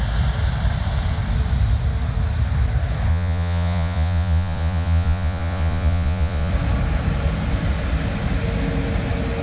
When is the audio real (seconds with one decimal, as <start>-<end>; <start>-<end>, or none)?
0.0-3.1; 6.5-9.4